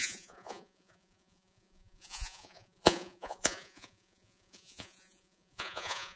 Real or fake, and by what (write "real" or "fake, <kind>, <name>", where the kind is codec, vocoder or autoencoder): fake, vocoder, Vocos